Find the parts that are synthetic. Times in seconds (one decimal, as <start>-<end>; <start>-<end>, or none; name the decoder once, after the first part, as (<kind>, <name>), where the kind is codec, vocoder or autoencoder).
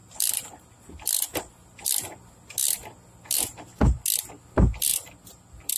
0.0-0.6 (vocoder, BigVGAN v2)